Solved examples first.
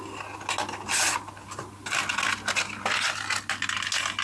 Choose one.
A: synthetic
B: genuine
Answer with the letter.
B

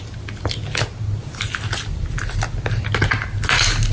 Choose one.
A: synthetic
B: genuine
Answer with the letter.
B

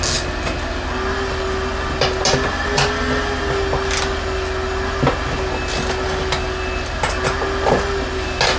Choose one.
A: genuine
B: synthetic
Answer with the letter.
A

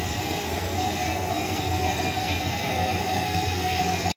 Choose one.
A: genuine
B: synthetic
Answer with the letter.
B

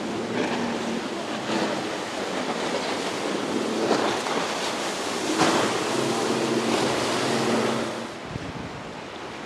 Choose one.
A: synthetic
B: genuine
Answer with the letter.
B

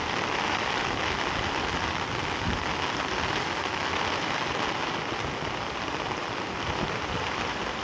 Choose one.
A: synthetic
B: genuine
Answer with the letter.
B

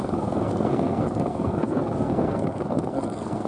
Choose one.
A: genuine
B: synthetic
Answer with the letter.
B